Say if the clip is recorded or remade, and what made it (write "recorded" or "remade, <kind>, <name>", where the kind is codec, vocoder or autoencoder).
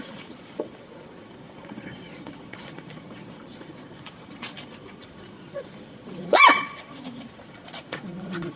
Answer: remade, vocoder, Vocos